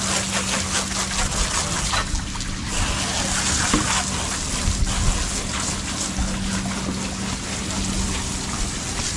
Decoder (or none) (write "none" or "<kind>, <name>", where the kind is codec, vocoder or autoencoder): none